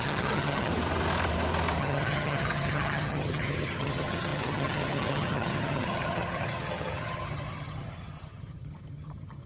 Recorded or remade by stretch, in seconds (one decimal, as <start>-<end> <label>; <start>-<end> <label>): 0.0-0.7 remade; 0.7-1.8 recorded; 1.8-9.5 remade